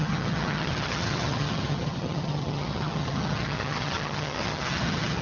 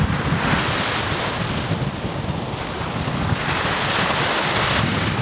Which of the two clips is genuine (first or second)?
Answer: second